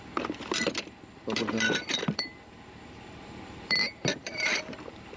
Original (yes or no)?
no